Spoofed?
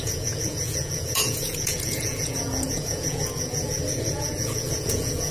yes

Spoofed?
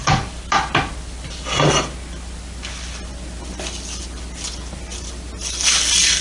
no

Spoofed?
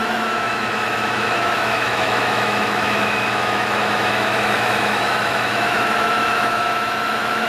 yes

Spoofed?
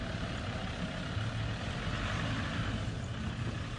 no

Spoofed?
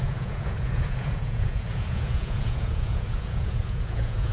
yes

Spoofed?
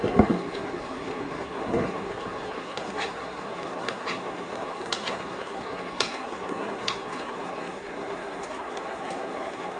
yes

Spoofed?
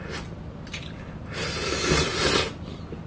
no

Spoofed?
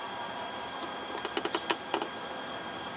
no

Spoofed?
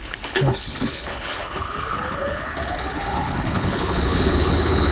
yes